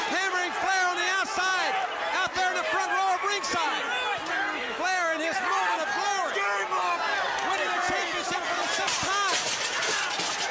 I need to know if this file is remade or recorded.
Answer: recorded